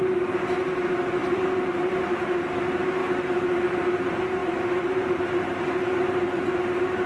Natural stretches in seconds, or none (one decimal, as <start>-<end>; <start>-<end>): 0.0-1.2; 2.0-3.0; 3.8-4.4; 5.2-7.1